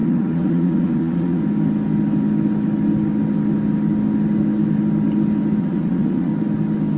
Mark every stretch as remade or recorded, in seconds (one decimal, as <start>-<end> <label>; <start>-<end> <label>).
0.0-1.4 remade; 1.4-5.6 recorded; 5.6-6.3 remade; 6.3-7.0 recorded